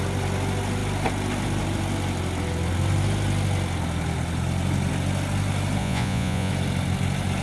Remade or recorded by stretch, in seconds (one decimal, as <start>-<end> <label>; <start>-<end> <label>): 0.0-5.8 recorded; 5.8-6.5 remade; 6.5-7.4 recorded